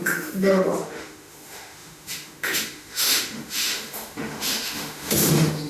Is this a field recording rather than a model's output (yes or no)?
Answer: no